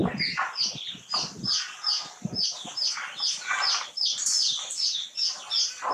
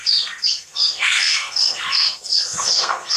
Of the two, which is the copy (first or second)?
second